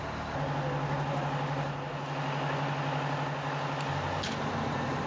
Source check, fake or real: real